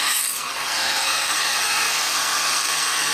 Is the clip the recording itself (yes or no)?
no